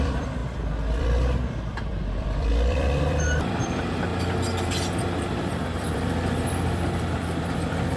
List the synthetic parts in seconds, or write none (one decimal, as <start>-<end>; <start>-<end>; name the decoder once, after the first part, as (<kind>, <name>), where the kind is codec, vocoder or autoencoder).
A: 0.0-4.1 (vocoder, BigVGAN v2); 5.2-8.0